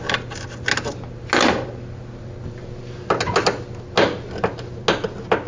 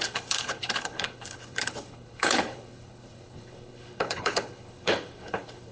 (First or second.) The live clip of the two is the first